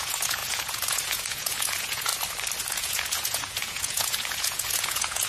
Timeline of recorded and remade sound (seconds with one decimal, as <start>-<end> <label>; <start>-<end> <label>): 0.0-2.1 remade; 2.1-2.7 recorded; 2.7-5.3 remade